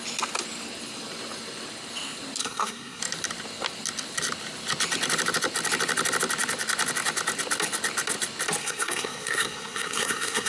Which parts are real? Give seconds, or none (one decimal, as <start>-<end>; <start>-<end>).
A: 0.0-2.4; 3.0-8.6

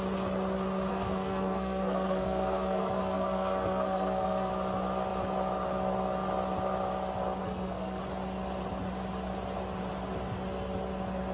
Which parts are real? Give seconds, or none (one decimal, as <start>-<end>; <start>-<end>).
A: 0.0-0.9; 4.5-7.4; 8.0-11.3

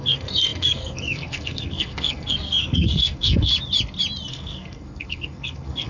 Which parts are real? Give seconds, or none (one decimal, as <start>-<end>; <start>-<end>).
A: 3.5-4.3

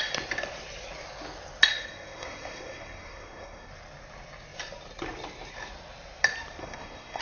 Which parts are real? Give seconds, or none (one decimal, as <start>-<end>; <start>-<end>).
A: 0.0-1.7; 3.7-6.6

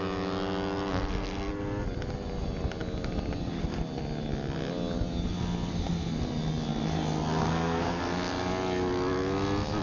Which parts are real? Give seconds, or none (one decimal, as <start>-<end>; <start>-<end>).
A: 0.0-0.9; 1.5-7.4; 8.0-9.8

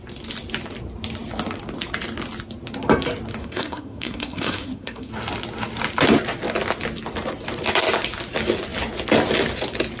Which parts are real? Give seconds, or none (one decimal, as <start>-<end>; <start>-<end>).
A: 0.0-3.4; 5.1-10.0

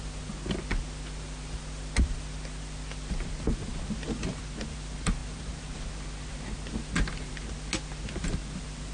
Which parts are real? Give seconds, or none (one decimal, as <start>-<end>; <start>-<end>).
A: 0.0-8.9

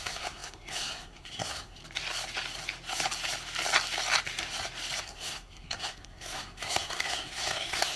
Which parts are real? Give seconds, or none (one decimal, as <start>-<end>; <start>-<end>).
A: 1.8-5.0